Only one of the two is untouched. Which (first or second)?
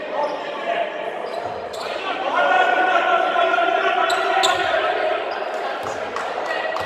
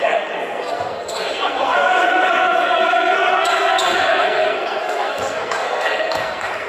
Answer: first